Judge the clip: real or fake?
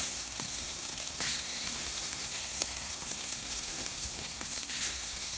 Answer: fake